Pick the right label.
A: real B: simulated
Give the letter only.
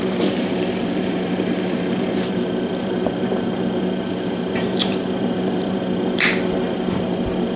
B